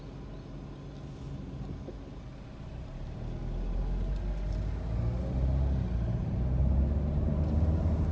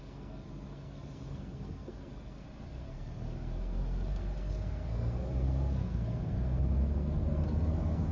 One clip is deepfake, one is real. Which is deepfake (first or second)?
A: second